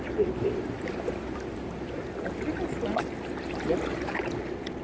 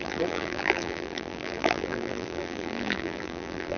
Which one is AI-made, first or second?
second